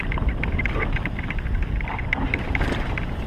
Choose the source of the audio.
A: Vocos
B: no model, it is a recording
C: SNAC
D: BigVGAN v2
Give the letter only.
B